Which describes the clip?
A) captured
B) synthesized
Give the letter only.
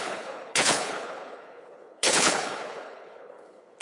B